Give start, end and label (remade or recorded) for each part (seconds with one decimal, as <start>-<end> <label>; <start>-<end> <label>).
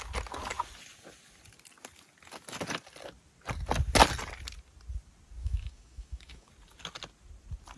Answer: 0.0-5.4 recorded; 5.4-6.5 remade; 6.5-7.8 recorded